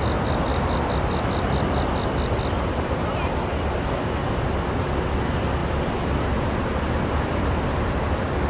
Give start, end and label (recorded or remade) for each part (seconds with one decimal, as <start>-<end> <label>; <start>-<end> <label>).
0.0-8.5 recorded